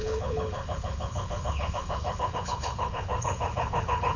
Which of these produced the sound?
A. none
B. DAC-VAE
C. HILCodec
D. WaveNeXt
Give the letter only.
C